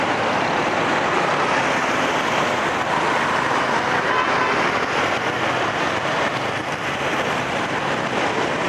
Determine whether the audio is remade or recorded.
recorded